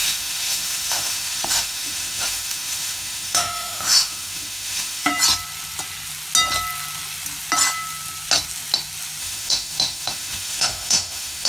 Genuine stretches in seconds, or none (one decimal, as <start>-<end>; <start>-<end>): 5.1-9.2